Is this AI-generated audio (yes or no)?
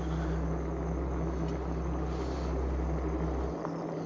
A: no